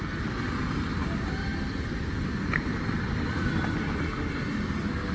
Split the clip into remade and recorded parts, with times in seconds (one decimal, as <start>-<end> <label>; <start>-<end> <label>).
0.0-5.1 recorded